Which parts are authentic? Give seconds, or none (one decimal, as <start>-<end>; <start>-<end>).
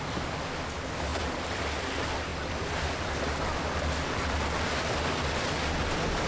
0.0-1.1; 1.9-2.3; 4.7-6.3